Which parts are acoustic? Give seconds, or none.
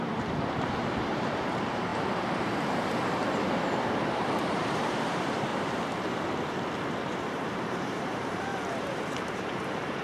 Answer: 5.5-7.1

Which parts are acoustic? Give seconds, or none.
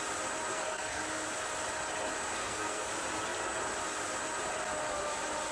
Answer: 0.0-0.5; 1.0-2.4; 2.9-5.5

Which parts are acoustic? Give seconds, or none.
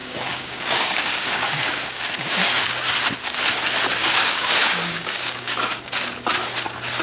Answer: 2.9-4.0; 5.9-7.0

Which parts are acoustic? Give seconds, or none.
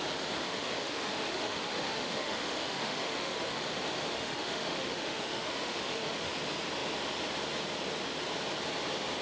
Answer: 0.0-0.5; 3.6-4.1; 6.3-9.2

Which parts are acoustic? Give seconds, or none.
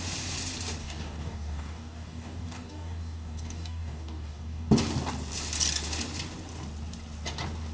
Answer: 0.0-0.8; 4.7-7.7